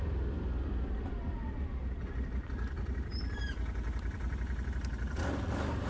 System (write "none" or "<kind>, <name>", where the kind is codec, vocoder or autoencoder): vocoder, BigVGAN v2